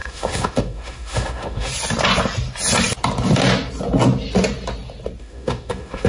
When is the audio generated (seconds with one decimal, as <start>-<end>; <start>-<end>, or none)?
0.0-1.7; 5.2-6.1